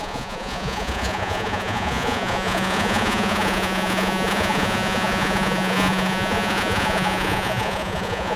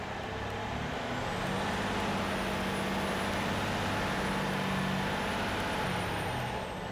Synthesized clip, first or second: first